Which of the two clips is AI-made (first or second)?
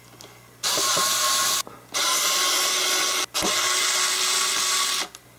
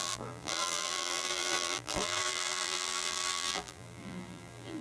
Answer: second